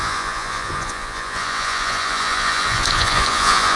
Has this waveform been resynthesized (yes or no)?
yes